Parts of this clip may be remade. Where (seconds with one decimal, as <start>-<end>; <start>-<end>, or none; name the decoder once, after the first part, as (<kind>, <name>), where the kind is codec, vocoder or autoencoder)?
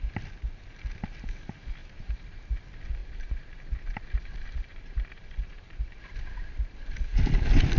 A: 1.8-2.6 (vocoder, BigVGAN v2); 3.0-6.0